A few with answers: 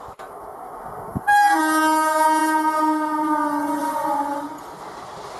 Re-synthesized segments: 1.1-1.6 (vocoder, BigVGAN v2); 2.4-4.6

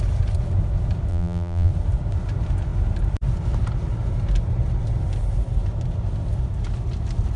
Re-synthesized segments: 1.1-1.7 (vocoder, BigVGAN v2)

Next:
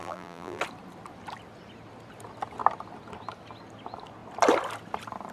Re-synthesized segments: 0.0-0.6 (vocoder, BigVGAN v2)

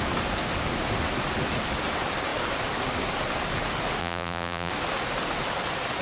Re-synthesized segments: 4.0-4.7 (vocoder, BigVGAN v2)

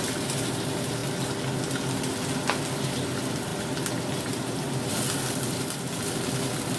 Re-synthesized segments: 0.0-1.0 (vocoder, BigVGAN v2); 2.8-6.8

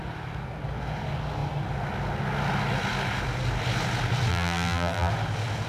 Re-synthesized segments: 4.3-5.1 (vocoder, BigVGAN v2)